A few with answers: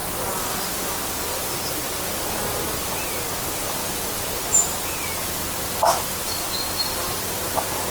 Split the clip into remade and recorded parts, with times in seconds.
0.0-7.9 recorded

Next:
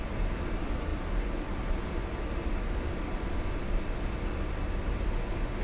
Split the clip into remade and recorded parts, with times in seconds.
0.0-5.6 recorded

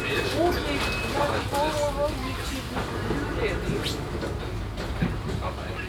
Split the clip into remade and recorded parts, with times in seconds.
0.0-5.9 recorded

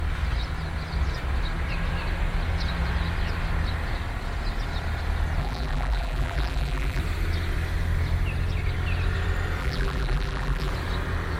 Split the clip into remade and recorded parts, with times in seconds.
0.0-5.4 recorded; 5.4-7.0 remade; 7.0-9.6 recorded; 9.6-10.7 remade; 10.7-11.4 recorded

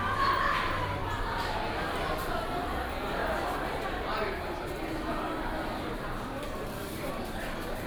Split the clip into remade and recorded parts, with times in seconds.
0.0-3.2 recorded; 3.2-7.1 remade; 7.1-7.9 recorded

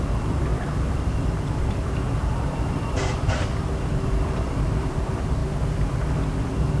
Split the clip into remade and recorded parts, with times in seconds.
0.0-5.4 remade; 5.4-5.9 recorded; 5.9-6.8 remade

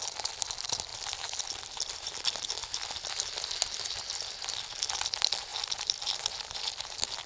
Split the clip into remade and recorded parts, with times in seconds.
0.0-0.9 remade; 0.9-1.5 recorded; 1.5-2.6 remade; 2.6-3.5 recorded; 3.5-5.5 remade; 5.5-7.3 recorded

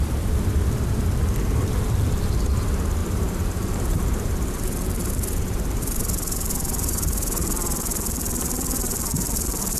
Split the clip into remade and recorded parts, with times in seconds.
0.0-9.8 remade